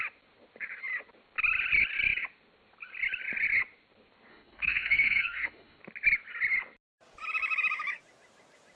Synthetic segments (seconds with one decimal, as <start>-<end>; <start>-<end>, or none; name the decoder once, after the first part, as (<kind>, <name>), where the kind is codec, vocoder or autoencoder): 4.3-5.8 (autoencoder, DAC-VAE)